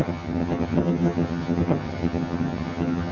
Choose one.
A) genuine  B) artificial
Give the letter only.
B